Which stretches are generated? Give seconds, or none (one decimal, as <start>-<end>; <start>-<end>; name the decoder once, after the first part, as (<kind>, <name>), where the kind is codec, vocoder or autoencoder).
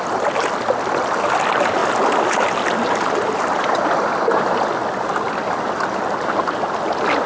none